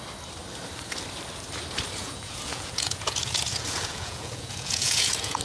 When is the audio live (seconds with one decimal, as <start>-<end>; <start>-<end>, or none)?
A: 0.0-2.0